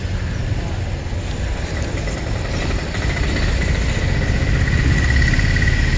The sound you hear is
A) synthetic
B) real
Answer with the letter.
B